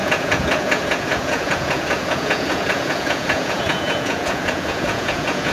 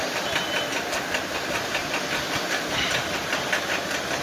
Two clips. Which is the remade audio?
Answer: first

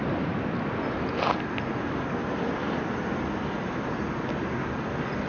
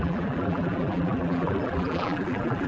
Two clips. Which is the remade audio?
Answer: second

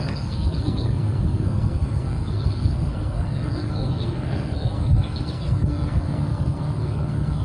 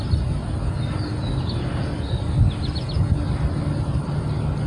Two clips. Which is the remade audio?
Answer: first